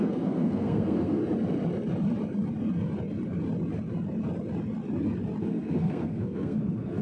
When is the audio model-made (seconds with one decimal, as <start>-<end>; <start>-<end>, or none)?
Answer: 0.0-1.2; 5.4-7.0